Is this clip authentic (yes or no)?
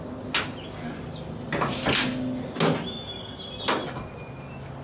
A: yes